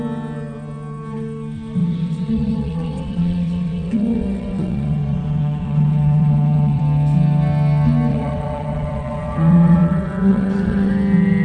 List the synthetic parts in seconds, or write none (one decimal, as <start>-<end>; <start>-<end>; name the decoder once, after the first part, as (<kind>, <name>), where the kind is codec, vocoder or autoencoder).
1.8-6.8 (vocoder, WaveNeXt); 8.1-10.9